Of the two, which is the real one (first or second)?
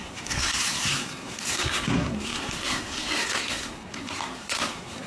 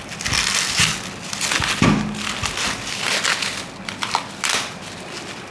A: second